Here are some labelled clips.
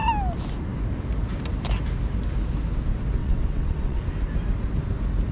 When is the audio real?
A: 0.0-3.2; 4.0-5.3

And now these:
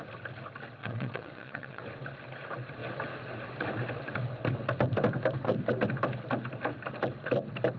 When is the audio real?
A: 0.0-0.8; 1.8-7.8

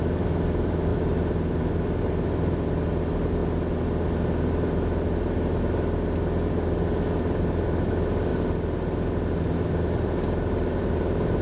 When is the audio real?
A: 0.0-11.4

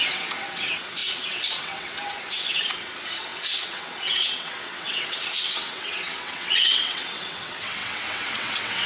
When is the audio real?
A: none

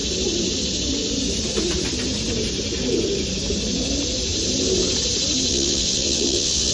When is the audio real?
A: 0.0-5.5